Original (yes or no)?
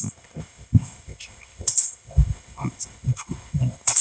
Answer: no